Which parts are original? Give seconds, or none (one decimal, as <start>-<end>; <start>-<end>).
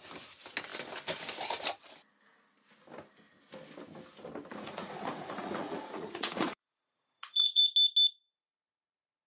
0.0-4.5; 7.6-9.3